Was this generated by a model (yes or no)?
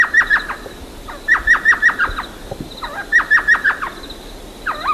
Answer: no